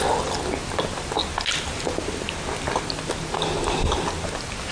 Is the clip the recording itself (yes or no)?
yes